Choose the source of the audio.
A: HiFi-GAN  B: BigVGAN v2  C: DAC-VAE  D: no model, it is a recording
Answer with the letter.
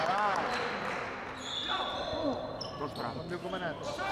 D